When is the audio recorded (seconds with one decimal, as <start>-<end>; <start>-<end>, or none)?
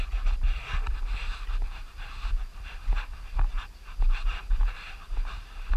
0.0-1.2; 2.9-3.5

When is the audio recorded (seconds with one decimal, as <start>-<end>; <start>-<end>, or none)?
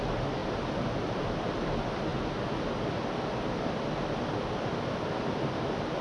0.0-6.0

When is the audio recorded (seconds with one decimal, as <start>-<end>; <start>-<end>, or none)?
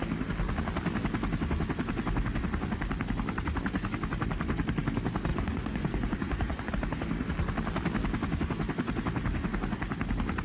0.0-5.3; 6.7-10.4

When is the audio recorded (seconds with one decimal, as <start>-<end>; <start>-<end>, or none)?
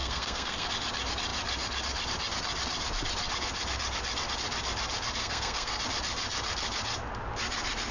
0.7-5.2; 5.8-7.9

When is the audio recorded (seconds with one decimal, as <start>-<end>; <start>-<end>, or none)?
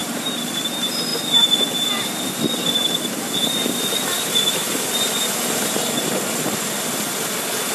0.6-7.7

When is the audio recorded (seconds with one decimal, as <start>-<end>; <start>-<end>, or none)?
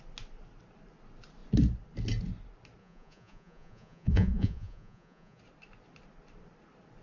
0.0-2.8; 5.4-7.0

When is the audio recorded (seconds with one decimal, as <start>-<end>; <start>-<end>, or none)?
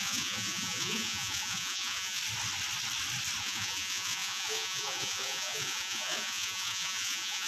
2.2-3.4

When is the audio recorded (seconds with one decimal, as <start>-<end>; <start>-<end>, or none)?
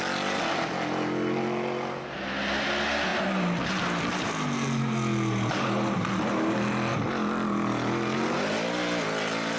0.0-9.6